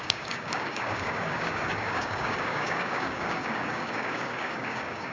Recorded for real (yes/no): no